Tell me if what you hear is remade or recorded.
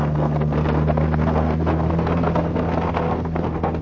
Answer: remade